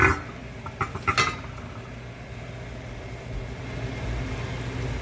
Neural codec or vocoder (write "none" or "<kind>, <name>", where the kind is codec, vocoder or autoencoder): none